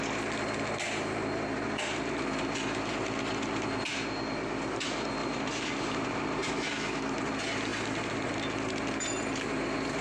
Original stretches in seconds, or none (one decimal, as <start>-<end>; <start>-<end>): 0.0-5.2; 6.7-10.0